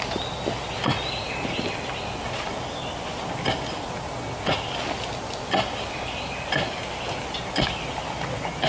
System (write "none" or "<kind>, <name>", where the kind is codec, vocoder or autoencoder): none